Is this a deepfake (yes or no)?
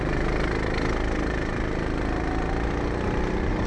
no